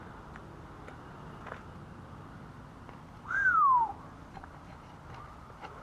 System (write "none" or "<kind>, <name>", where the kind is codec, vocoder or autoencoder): none